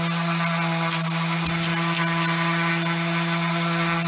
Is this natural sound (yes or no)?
yes